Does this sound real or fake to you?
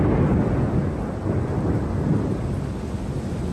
real